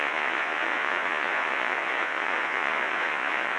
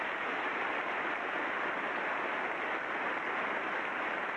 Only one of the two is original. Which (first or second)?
second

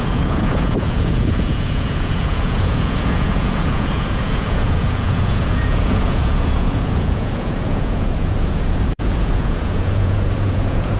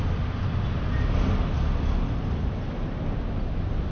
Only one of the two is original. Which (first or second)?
second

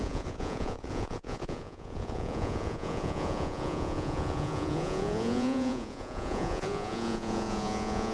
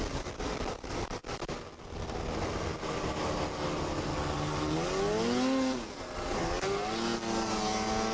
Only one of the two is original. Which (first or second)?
second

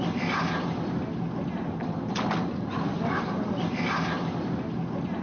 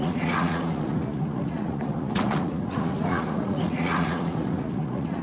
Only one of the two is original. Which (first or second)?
first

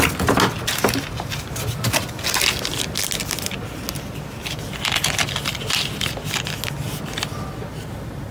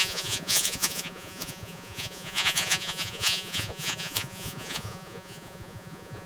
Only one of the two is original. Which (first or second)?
first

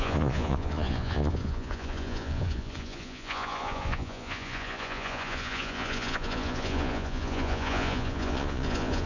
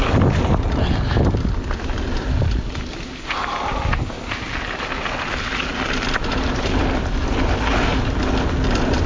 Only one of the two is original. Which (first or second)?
second